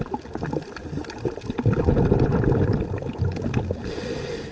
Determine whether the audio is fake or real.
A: real